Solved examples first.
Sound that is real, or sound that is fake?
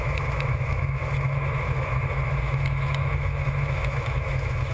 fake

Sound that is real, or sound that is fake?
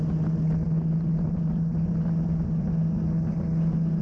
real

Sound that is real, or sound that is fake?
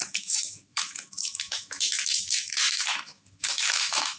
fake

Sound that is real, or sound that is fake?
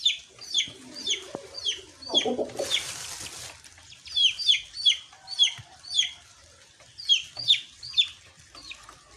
real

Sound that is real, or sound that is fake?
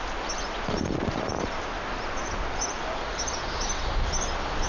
real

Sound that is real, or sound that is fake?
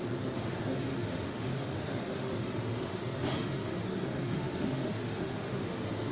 fake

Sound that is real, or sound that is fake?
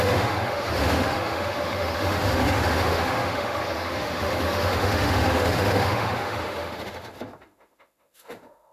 fake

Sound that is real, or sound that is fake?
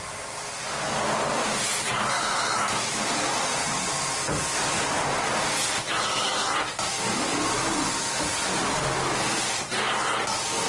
real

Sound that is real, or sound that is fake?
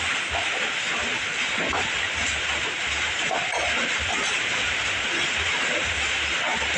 real